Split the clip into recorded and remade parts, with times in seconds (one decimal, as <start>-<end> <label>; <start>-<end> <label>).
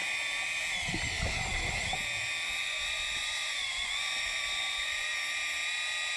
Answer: 0.0-2.6 recorded; 2.6-5.1 remade; 5.1-6.2 recorded